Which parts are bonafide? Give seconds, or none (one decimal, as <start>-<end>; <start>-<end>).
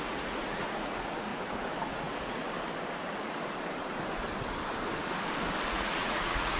1.3-1.8; 2.4-5.7